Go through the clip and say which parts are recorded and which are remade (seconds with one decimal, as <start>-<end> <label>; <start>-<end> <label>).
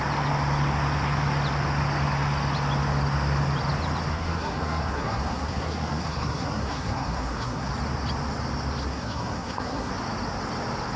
0.0-4.1 recorded; 4.1-7.7 remade; 7.7-8.8 recorded; 8.8-9.9 remade; 9.9-11.0 recorded